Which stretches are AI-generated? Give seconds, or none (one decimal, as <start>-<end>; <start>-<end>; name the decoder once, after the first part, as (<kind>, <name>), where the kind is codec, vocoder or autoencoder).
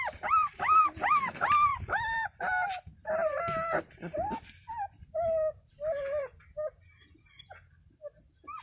1.7-2.4 (vocoder, BigVGAN v2)